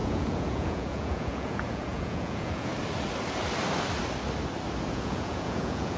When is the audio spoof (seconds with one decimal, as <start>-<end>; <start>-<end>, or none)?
0.0-2.7; 4.9-6.0